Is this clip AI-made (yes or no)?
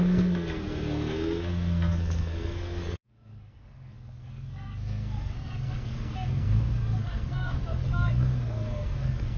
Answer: yes